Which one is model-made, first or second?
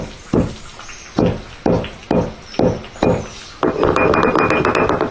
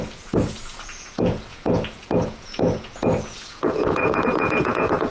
second